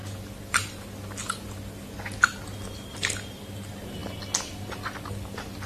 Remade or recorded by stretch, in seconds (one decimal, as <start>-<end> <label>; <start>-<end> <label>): 0.0-5.7 recorded